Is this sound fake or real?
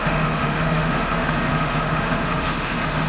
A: fake